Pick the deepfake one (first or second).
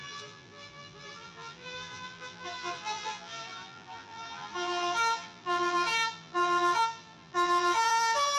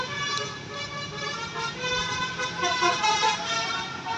first